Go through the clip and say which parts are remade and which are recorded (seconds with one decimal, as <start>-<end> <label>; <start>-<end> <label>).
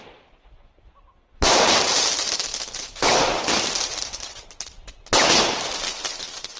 0.0-4.0 remade; 4.0-6.6 recorded